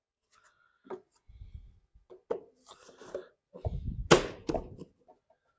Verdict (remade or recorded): recorded